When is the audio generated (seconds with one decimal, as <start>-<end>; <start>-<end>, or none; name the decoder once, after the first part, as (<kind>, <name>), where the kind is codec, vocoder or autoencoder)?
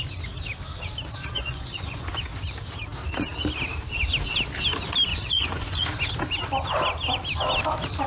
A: 1.2-2.1 (vocoder, Vocos); 5.1-6.0